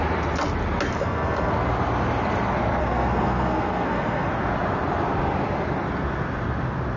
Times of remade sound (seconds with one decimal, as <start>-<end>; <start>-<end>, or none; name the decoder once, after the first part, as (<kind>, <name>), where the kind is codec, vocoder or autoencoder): 1.0-1.5 (codec, SNAC); 2.8-4.3